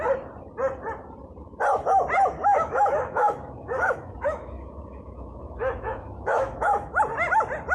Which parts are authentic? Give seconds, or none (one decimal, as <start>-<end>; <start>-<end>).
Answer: 0.0-2.4; 7.0-7.7